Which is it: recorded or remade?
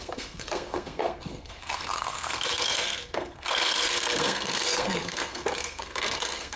remade